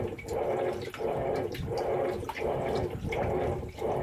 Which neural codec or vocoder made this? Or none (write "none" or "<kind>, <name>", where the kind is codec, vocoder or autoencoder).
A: none